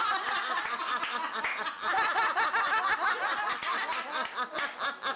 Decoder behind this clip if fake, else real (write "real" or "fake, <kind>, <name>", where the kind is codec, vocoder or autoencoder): real